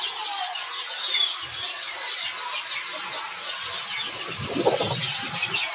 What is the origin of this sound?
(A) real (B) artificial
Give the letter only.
A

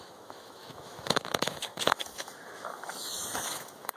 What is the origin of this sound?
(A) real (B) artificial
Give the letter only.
B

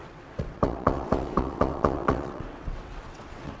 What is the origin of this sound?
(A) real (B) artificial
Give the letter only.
B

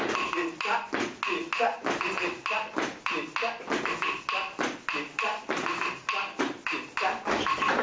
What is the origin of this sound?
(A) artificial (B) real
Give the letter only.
B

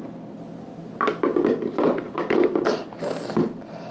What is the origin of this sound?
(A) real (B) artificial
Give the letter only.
A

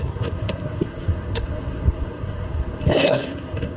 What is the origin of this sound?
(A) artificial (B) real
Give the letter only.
A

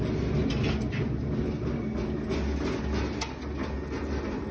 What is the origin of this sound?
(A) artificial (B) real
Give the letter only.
B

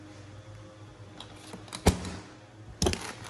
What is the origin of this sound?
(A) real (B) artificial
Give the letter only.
A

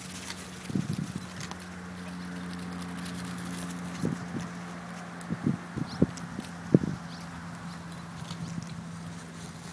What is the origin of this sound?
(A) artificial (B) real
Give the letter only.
B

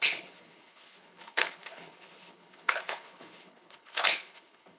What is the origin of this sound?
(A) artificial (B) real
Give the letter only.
A